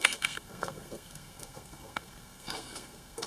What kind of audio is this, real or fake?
fake